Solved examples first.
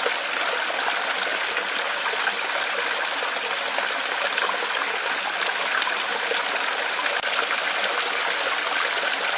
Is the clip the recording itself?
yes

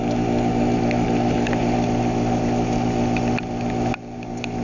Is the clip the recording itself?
yes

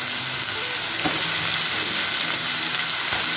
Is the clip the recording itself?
yes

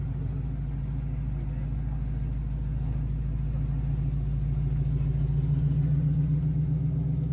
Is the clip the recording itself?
yes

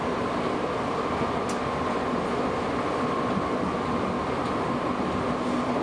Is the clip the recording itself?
yes